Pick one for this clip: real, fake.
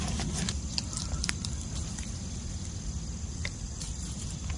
real